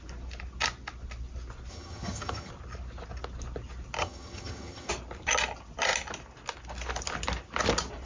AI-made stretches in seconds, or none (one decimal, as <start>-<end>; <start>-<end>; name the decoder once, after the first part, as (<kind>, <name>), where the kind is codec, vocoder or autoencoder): 1.7-2.5 (vocoder, HiFi-GAN); 4.0-4.9